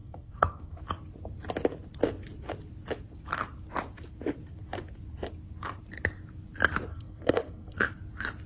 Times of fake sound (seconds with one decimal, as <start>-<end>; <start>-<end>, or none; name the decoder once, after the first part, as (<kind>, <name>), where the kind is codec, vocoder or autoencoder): 0.0-0.8 (codec, SNAC); 6.9-7.9